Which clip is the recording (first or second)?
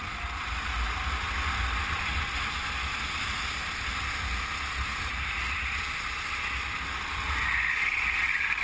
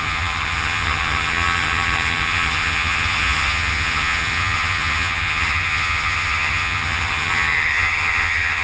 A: first